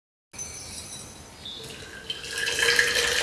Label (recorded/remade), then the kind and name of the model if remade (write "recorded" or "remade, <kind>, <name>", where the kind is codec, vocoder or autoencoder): recorded